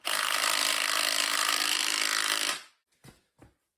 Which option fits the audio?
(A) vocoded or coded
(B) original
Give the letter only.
A